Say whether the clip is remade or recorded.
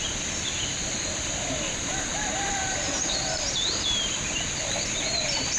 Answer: remade